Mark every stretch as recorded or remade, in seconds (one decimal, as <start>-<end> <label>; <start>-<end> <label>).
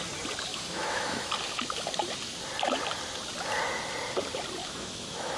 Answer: 0.0-0.5 recorded; 0.5-1.3 remade; 1.3-4.6 recorded; 4.6-5.4 remade